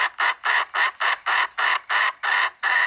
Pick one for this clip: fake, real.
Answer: real